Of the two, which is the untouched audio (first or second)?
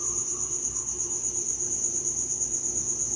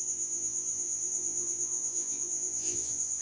first